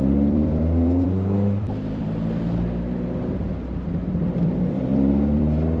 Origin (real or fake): fake